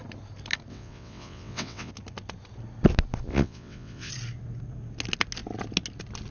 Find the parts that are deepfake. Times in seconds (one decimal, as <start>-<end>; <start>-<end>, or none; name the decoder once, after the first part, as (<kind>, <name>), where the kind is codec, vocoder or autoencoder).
0.7-1.9 (vocoder, WaveNeXt); 3.3-4.1